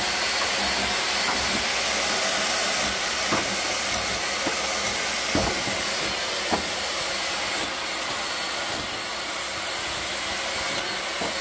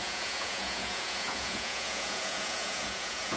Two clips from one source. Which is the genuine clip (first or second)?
first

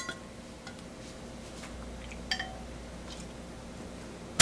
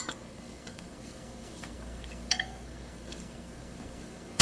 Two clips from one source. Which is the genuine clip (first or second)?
first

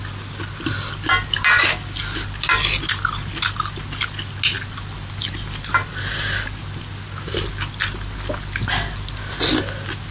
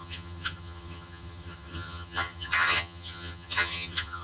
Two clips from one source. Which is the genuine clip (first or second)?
first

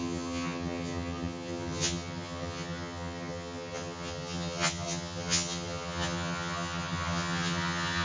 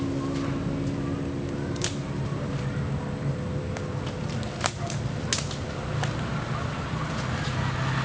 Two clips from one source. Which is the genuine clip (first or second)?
second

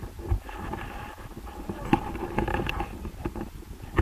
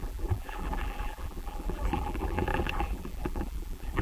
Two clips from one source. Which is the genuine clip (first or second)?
first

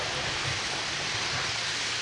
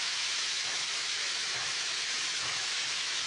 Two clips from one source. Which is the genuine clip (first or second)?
first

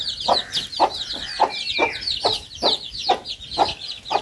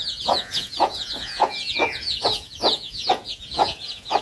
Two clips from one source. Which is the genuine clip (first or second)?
first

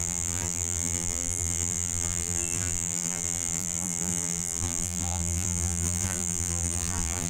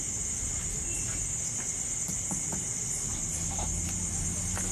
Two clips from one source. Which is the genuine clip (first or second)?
second